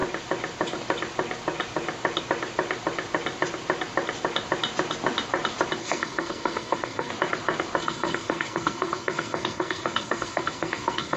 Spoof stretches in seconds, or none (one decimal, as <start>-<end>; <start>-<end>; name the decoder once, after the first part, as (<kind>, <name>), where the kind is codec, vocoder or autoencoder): 5.8-7.1 (codec, SNAC); 7.8-11.2